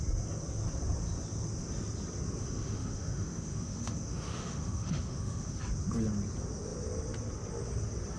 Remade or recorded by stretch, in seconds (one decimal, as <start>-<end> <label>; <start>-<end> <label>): 0.0-2.4 recorded; 2.4-5.6 remade; 5.6-8.2 recorded